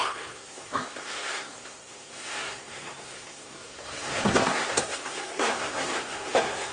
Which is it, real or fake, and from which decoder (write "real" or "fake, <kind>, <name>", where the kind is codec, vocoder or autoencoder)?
fake, codec, SNAC